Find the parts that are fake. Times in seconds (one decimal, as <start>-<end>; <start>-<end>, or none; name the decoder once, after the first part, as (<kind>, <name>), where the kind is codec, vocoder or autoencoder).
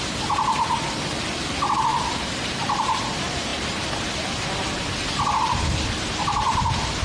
1.9-2.8 (vocoder, BigVGAN v2)